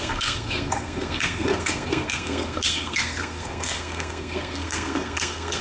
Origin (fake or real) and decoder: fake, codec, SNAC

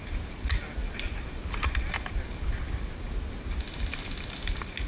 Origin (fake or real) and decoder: real